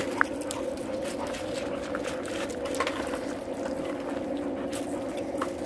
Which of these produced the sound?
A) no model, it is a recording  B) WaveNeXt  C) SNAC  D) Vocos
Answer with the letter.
A